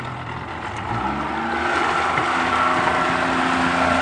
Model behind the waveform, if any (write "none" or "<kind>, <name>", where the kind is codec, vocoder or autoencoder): none